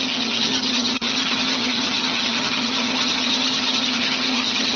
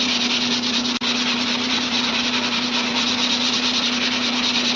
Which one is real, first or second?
second